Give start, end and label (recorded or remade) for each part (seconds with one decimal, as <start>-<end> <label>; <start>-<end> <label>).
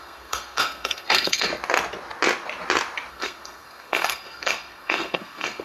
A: 0.0-1.5 remade; 1.5-3.1 recorded; 3.1-5.6 remade